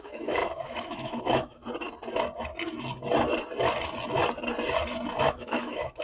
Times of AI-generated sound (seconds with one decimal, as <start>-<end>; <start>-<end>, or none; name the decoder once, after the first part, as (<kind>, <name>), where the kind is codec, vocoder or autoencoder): 0.0-1.6 (autoencoder, DAC-VAE); 5.2-6.0